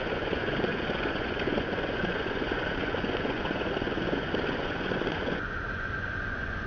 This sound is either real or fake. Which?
fake